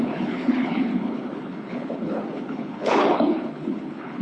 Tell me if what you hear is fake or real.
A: fake